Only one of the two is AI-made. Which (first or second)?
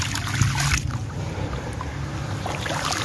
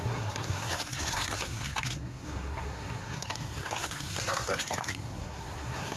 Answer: second